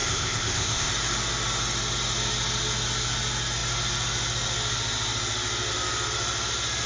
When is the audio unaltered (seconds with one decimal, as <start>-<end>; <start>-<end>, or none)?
0.9-6.9